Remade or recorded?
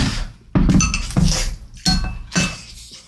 recorded